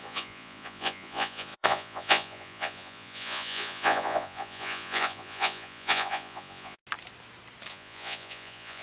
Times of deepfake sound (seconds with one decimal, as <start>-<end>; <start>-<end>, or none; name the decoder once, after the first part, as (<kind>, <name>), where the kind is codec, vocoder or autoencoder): 0.0-6.8 (vocoder, Vocos); 7.7-8.8